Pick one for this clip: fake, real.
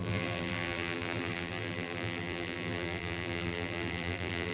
fake